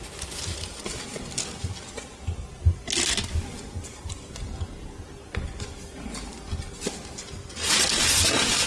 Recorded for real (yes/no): yes